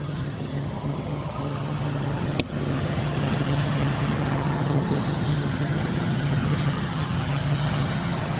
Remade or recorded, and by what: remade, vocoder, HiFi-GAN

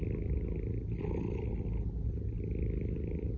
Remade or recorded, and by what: recorded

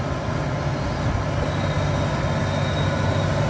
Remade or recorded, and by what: recorded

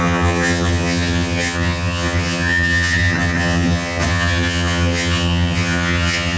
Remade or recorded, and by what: remade, vocoder, HiFi-GAN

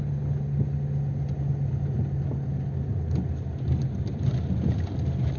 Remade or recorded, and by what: recorded